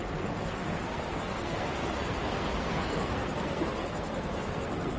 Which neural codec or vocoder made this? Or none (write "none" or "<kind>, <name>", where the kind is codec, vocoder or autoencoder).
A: codec, SNAC